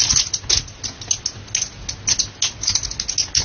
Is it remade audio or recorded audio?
recorded